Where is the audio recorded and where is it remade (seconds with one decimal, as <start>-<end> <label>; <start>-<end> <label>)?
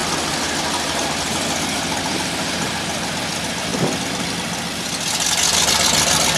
0.0-1.6 remade; 1.6-6.4 recorded